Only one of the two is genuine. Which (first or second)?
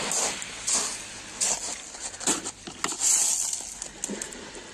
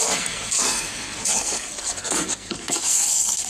first